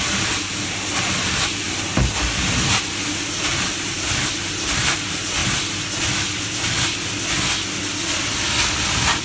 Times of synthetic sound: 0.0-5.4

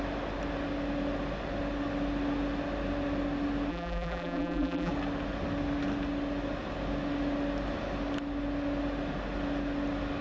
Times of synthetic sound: 3.7-4.9